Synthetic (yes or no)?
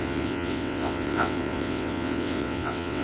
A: yes